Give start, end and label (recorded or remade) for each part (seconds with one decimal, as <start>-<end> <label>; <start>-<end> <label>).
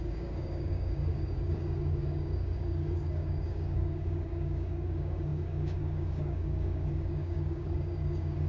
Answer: 0.0-8.5 remade